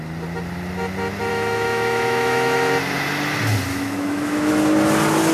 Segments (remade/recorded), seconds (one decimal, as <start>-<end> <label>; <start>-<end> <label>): 0.0-1.3 recorded; 1.3-2.7 remade; 2.7-3.7 recorded; 3.7-4.5 remade; 4.5-5.3 recorded